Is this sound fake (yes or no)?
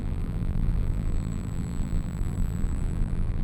yes